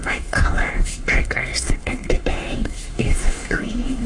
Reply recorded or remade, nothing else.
remade